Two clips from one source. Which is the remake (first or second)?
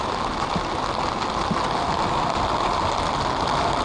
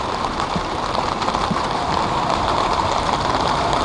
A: second